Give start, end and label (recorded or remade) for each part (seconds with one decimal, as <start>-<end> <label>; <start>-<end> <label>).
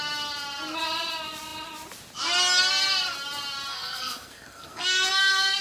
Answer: 0.0-3.7 recorded; 3.7-5.6 remade